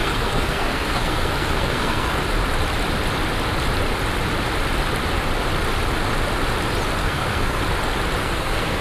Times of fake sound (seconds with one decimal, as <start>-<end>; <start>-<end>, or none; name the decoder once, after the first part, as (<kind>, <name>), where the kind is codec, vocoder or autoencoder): 0.0-2.2 (codec, SNAC); 7.0-7.6; 8.2-8.8

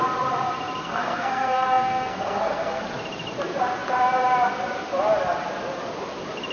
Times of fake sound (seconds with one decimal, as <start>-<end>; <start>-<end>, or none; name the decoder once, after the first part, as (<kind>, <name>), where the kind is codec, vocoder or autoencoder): 0.8-2.8 (codec, SNAC)

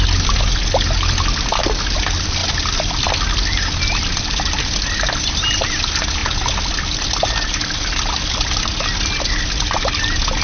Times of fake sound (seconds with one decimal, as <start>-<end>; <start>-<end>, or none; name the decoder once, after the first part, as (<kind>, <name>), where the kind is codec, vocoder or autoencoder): none

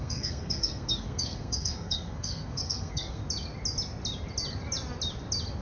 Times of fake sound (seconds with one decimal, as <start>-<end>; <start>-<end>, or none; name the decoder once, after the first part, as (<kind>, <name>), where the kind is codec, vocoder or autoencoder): 0.0-3.2 (codec, SNAC)

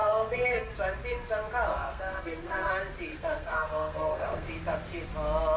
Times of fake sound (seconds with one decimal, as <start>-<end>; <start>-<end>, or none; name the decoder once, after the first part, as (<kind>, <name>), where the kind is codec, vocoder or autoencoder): 0.0-0.7 (codec, SNAC); 1.7-2.7; 3.1-4.5

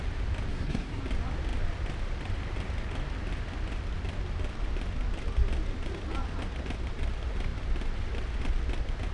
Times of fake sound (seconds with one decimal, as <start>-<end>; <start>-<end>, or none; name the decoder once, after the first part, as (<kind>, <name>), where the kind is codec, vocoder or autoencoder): 0.5-1.0 (codec, SNAC)

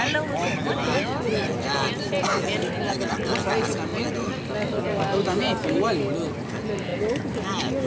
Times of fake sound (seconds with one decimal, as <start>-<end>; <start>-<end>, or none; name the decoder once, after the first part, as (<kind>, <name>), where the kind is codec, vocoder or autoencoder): none

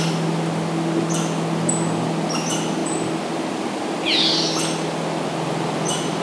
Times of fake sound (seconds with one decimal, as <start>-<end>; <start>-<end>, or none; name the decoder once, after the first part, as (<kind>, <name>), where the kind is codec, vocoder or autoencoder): none